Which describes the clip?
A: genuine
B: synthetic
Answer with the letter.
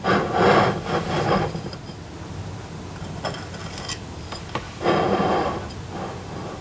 A